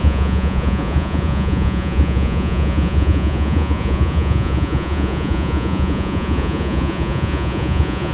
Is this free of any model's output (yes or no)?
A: no